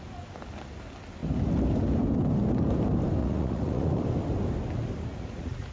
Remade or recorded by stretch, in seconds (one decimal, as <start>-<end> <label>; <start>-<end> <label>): 0.0-3.2 recorded; 3.2-4.0 remade; 4.0-5.1 recorded; 5.1-5.7 remade